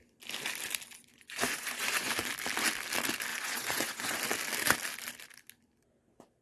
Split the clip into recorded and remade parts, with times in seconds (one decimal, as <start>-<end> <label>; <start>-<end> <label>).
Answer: 0.0-1.1 recorded; 1.1-2.1 remade; 2.1-3.3 recorded; 3.3-4.2 remade; 4.2-6.4 recorded